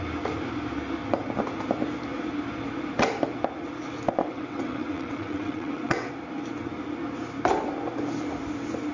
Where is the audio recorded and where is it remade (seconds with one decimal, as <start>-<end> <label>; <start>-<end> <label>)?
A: 0.0-4.2 recorded; 4.2-6.1 remade; 6.1-8.9 recorded